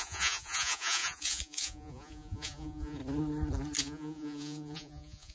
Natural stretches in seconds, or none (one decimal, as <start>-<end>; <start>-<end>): 3.0-3.8